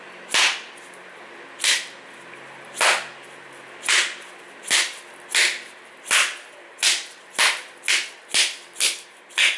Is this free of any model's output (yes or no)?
yes